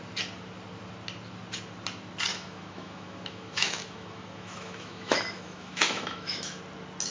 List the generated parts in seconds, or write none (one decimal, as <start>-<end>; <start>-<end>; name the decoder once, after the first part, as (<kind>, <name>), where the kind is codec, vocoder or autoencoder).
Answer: 2.3-6.6 (autoencoder, DAC-VAE)